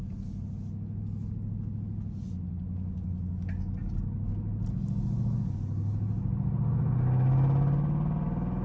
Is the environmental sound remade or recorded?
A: recorded